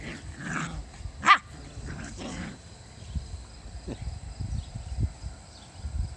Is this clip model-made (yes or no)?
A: no